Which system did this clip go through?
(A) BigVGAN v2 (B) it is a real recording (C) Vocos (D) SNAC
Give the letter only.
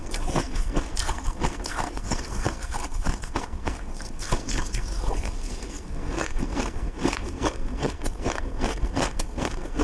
D